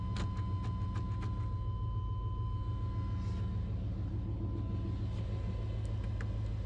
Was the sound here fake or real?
real